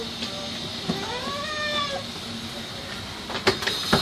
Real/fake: real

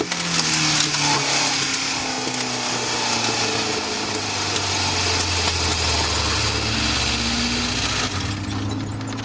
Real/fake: real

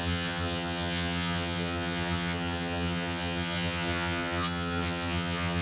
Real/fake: fake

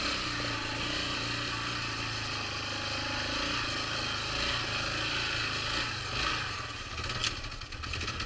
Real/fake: real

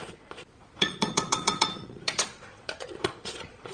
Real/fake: fake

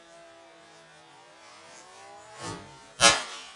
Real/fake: real